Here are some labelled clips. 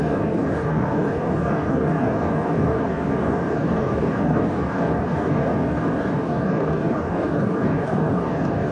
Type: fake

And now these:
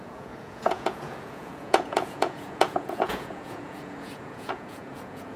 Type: fake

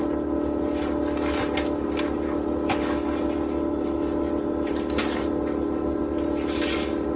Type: real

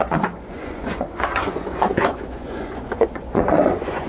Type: fake